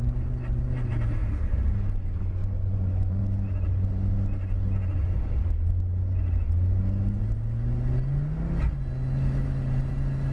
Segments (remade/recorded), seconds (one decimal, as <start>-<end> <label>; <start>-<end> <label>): 0.0-2.4 recorded; 2.4-3.2 remade; 3.2-10.3 recorded